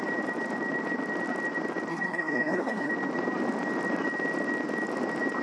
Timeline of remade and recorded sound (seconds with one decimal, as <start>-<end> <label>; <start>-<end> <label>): 0.0-1.9 recorded; 1.9-2.9 remade; 2.9-5.4 recorded